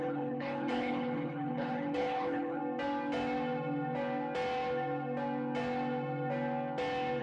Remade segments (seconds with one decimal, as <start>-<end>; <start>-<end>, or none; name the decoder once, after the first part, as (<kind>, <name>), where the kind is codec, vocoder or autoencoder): 0.0-2.6 (codec, HILCodec)